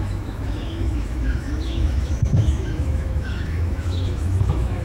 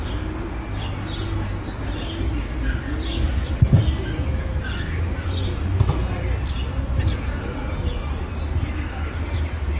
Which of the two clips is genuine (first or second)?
second